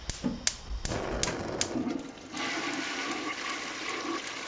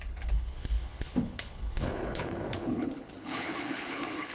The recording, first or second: first